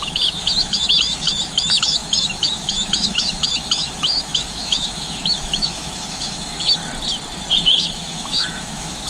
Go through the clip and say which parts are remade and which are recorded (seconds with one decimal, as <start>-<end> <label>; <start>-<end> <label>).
0.0-6.8 remade; 6.8-7.6 recorded; 7.6-9.1 remade

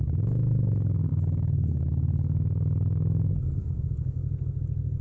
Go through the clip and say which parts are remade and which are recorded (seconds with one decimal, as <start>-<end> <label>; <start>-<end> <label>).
0.0-4.2 remade; 4.2-5.0 recorded